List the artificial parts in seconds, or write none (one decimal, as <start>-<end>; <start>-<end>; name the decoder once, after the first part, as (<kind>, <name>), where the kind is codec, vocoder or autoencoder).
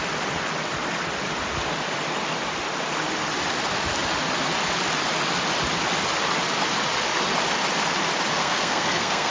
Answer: 8.4-9.3 (codec, SNAC)